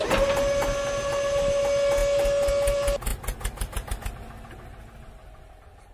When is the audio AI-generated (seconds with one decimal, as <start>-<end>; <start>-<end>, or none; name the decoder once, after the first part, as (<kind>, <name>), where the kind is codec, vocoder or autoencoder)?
none